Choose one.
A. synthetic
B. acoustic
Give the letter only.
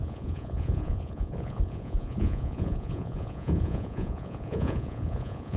A